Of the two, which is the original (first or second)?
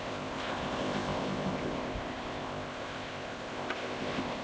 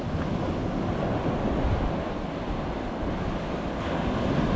second